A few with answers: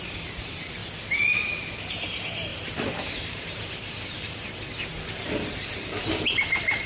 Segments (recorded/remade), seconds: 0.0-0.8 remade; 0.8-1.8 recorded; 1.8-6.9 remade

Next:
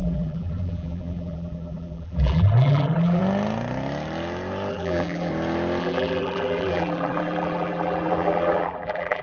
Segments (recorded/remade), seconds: 0.0-3.2 remade; 3.2-4.7 recorded; 4.7-5.3 remade; 5.3-5.8 recorded; 5.8-9.2 remade

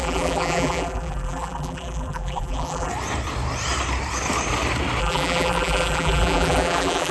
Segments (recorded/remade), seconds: 0.0-2.9 remade; 2.9-5.0 recorded; 5.0-7.1 remade

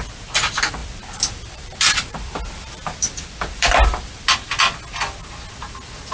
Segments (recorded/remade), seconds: 0.0-0.8 recorded; 0.8-4.5 remade; 4.5-6.1 recorded

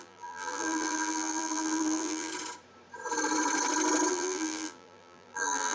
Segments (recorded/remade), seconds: 0.0-2.3 remade; 2.3-4.1 recorded; 4.1-5.7 remade

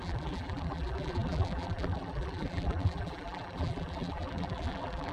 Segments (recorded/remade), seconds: 0.0-5.1 remade

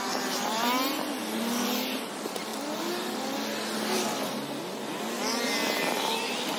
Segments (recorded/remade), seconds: 0.0-6.6 recorded